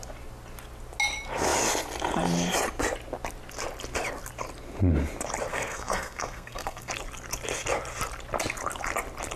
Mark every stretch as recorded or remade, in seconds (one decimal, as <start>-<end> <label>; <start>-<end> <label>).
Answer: 0.0-5.5 recorded; 5.5-6.9 remade; 6.9-9.4 recorded